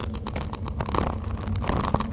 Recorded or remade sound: recorded